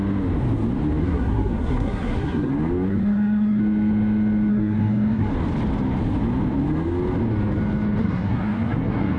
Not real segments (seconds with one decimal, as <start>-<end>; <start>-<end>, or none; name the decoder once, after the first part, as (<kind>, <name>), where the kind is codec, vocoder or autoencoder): 1.0-2.5 (codec, SNAC); 2.9-3.6; 4.5-5.3; 8.0-9.2